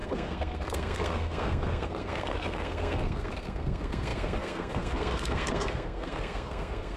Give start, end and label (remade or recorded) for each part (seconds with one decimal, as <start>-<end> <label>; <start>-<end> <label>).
0.0-7.0 remade